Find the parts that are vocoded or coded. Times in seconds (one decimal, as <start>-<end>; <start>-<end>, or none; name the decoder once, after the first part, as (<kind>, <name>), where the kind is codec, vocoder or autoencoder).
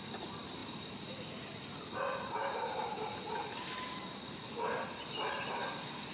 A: none